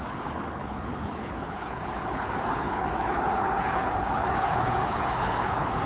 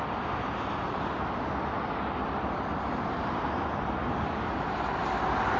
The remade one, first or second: first